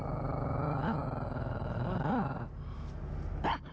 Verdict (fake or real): real